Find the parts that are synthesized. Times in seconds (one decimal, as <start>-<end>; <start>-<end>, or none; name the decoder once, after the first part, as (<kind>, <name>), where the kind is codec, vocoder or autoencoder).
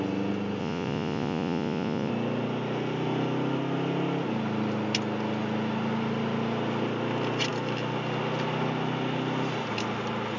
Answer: 0.6-2.1 (vocoder, Vocos)